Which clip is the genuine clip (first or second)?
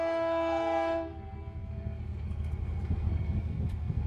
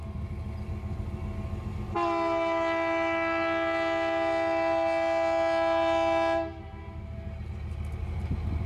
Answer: second